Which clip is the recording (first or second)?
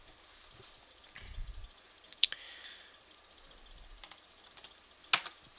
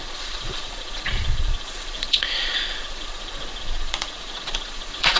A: first